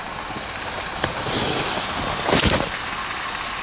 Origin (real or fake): real